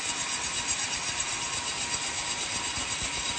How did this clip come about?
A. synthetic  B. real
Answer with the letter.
B